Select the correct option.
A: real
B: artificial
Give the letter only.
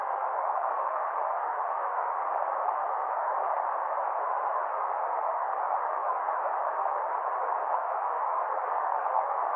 B